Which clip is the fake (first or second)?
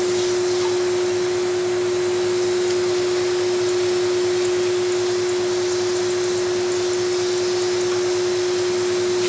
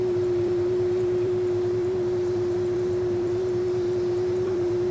second